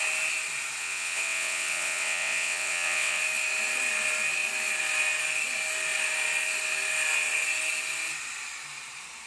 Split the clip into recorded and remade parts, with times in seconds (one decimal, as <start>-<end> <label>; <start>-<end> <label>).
0.0-0.8 recorded; 0.8-3.2 remade; 3.2-9.3 recorded